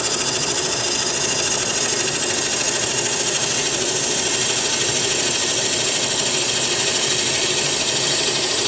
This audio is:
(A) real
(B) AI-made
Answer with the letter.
A